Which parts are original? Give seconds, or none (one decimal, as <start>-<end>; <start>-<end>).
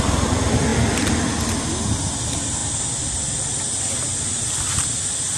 0.0-5.4